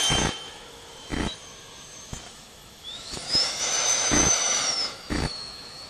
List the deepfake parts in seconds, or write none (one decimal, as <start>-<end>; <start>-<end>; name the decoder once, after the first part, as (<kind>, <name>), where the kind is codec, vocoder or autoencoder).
0.0-5.9 (autoencoder, DAC-VAE)